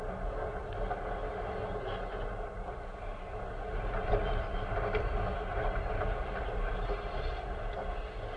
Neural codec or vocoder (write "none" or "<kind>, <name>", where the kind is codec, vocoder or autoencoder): none